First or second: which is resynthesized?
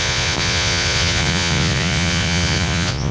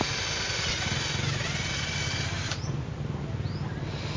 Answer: first